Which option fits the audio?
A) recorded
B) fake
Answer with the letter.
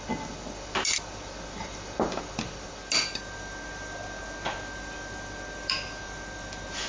A